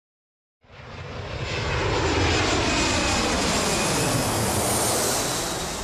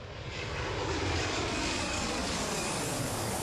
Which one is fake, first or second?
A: second